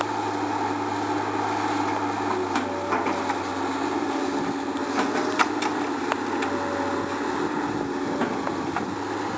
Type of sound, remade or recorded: recorded